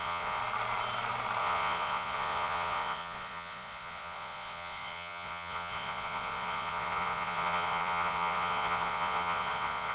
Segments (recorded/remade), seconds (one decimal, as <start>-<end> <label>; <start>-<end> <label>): 0.0-0.4 remade; 0.4-1.4 recorded; 1.4-9.9 remade